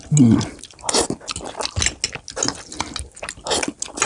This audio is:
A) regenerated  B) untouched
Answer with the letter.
B